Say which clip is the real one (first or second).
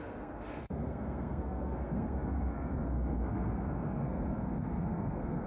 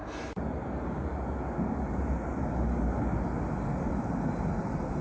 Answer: second